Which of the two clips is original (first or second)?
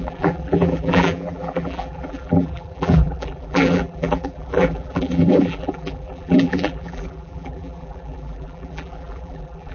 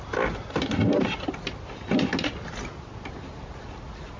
second